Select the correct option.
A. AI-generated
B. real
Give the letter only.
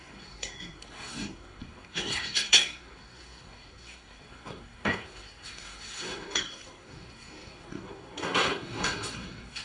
A